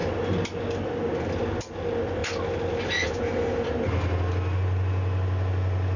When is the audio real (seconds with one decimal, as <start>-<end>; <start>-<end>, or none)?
0.0-6.0